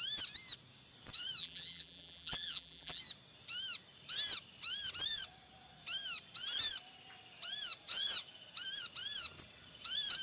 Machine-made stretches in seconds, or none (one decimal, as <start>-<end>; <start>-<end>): 1.4-3.0